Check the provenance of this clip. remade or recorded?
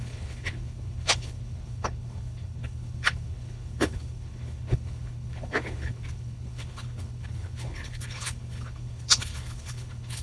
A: remade